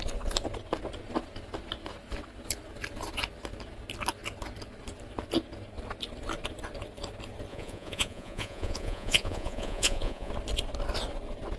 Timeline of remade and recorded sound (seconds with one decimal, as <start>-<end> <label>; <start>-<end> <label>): 0.0-7.5 recorded; 7.5-10.3 remade; 10.3-11.6 recorded